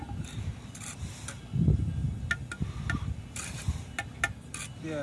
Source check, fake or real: real